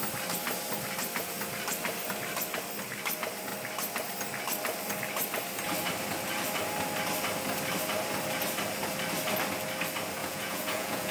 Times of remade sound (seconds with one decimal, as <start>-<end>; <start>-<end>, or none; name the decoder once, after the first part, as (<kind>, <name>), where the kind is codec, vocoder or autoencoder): 10.2-11.1 (vocoder, Vocos)